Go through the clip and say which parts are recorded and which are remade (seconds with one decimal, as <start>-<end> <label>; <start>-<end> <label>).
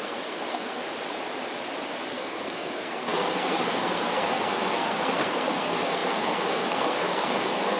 0.0-0.8 remade; 0.8-2.1 recorded; 2.1-7.8 remade